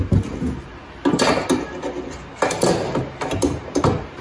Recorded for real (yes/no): yes